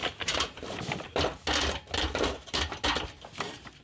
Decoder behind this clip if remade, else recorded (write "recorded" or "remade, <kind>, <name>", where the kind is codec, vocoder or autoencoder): recorded